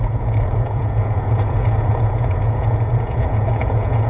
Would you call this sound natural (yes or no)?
no